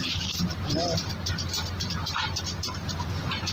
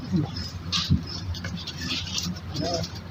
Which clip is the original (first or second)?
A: first